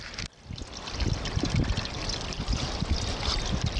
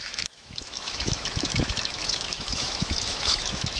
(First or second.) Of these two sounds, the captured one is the first